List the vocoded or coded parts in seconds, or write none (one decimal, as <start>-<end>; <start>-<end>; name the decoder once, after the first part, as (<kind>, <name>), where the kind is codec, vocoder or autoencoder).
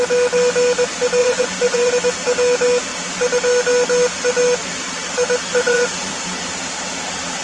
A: 1.2-1.9 (vocoder, Vocos); 5.5-6.1